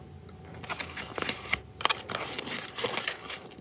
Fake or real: real